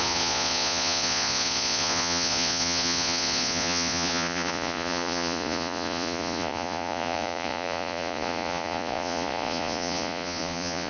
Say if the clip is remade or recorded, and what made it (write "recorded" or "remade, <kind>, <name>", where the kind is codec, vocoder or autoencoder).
remade, vocoder, Vocos